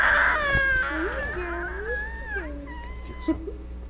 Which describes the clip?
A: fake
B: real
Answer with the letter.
B